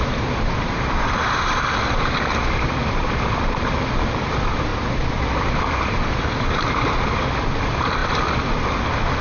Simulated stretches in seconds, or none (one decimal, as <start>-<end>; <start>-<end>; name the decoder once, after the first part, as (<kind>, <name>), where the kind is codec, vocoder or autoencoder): none